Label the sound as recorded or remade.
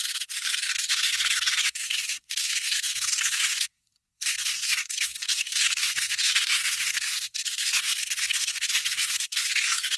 remade